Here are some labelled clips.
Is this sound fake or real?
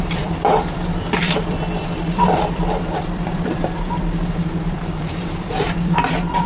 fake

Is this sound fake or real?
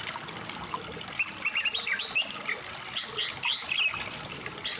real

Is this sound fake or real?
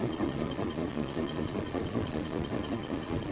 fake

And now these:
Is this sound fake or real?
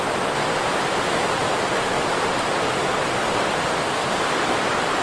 real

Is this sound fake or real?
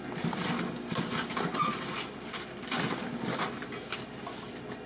real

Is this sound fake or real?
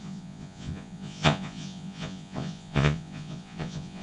fake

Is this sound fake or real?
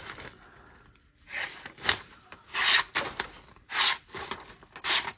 real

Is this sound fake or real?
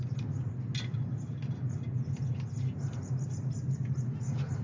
real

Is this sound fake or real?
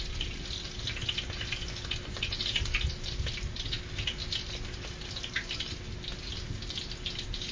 real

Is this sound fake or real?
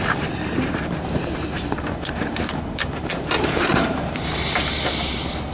fake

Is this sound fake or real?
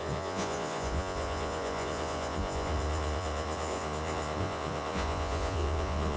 fake